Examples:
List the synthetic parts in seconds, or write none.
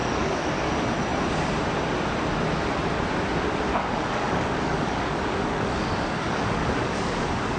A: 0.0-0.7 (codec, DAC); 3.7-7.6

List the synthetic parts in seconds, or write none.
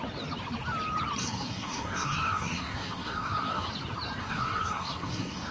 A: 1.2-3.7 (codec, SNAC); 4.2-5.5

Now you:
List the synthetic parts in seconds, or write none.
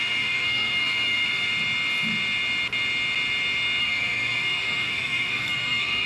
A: 0.0-1.5 (codec, SNAC); 3.8-6.1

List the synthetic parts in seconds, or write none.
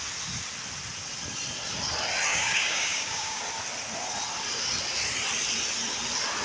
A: 2.3-3.4 (codec, DAC)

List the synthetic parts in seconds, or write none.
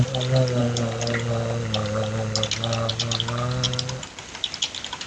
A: none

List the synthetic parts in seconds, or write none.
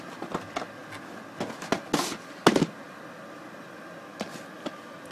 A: none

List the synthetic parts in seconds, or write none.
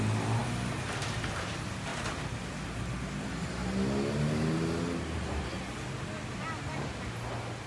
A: none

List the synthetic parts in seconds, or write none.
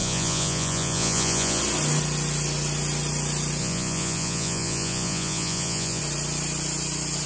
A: 0.0-1.6 (vocoder, Vocos); 3.6-6.0